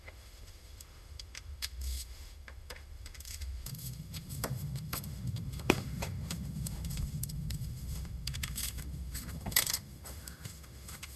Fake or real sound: fake